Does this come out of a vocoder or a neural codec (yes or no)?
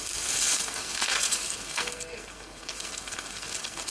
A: yes